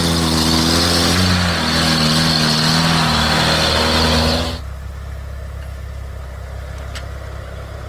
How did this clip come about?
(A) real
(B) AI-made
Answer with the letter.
A